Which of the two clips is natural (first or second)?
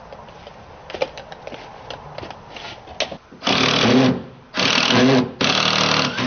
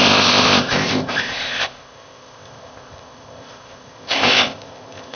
first